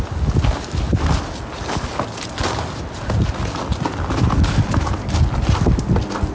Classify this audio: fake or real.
real